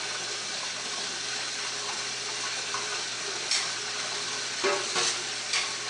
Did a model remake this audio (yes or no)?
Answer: no